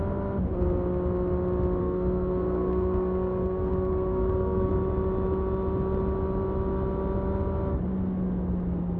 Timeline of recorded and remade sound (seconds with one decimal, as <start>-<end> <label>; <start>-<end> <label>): 0.0-1.8 recorded; 1.8-4.7 remade; 4.7-9.0 recorded

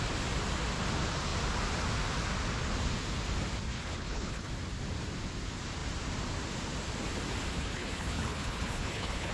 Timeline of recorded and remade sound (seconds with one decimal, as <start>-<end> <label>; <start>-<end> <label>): 0.0-3.7 recorded; 3.7-4.5 remade; 4.5-7.5 recorded; 7.5-9.3 remade

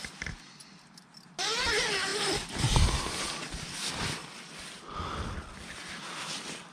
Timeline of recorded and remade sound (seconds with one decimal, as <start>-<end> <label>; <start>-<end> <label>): 0.0-6.7 recorded

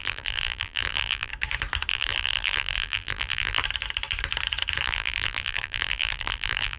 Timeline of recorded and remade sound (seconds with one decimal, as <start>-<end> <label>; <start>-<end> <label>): 0.0-1.3 remade; 1.3-1.9 recorded; 1.9-3.6 remade; 3.6-4.8 recorded; 4.8-6.8 remade

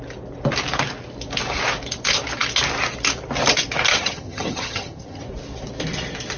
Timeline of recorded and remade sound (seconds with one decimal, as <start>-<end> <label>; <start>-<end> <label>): 0.0-3.9 recorded; 3.9-5.2 remade; 5.2-6.4 recorded

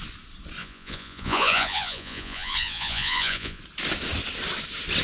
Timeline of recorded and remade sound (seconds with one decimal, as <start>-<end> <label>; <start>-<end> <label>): 0.0-0.6 recorded; 0.6-3.6 remade; 3.6-5.0 recorded

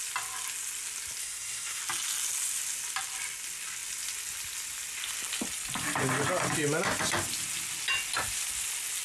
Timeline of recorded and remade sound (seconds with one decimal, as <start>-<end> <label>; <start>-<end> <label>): 0.0-1.2 recorded; 1.2-1.8 remade; 1.8-9.0 recorded